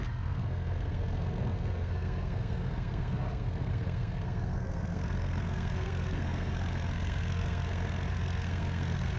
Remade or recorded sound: remade